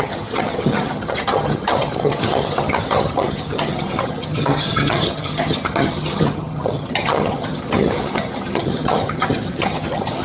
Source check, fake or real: fake